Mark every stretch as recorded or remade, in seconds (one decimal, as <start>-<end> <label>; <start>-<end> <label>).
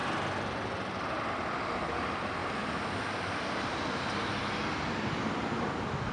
0.0-6.1 recorded